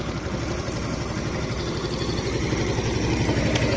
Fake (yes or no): no